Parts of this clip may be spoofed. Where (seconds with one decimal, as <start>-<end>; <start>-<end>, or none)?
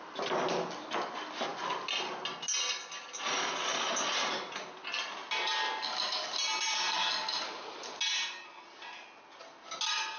none